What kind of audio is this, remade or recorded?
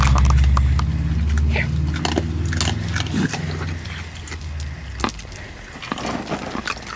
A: recorded